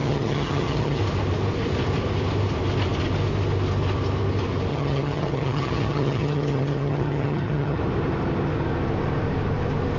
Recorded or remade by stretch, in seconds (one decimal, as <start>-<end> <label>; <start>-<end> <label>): 0.0-1.0 remade; 1.0-4.7 recorded; 4.7-7.8 remade; 7.8-10.0 recorded